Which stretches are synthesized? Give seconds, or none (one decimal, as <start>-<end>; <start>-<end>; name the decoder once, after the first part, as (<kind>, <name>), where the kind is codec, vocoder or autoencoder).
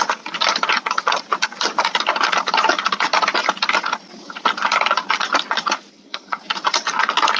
5.9-6.4 (codec, SNAC)